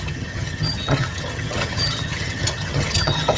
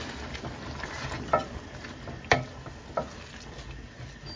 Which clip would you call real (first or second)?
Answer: second